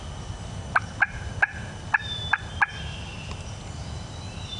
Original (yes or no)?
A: yes